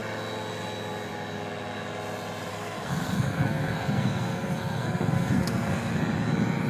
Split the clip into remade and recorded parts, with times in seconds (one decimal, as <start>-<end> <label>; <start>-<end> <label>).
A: 0.0-2.5 recorded; 2.5-6.0 remade; 6.0-6.7 recorded